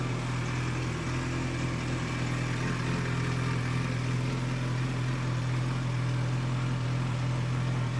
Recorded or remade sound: recorded